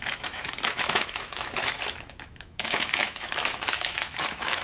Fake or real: fake